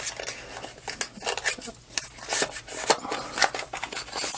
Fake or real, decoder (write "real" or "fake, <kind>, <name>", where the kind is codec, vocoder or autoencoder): real